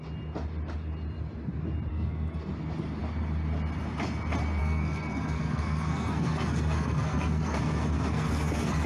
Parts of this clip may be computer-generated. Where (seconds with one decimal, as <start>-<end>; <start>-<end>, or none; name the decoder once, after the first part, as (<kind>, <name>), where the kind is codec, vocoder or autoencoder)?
1.9-2.5 (codec, SNAC); 4.6-8.9